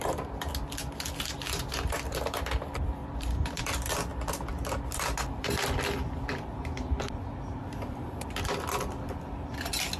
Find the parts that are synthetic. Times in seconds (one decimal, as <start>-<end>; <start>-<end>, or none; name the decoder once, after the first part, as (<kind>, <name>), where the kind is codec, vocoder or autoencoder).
3.0-3.6 (vocoder, BigVGAN v2)